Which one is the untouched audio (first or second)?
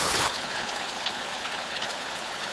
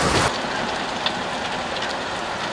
second